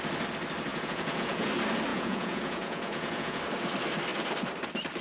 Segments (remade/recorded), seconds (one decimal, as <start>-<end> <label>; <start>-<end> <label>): 0.0-0.7 recorded; 0.7-1.5 remade; 1.5-1.9 recorded; 1.9-3.4 remade; 3.4-5.0 recorded